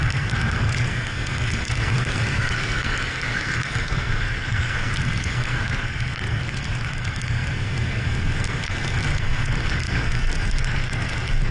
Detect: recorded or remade remade